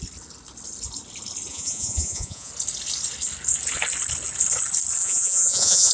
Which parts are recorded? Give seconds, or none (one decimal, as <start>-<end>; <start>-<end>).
0.0-1.5; 2.5-5.0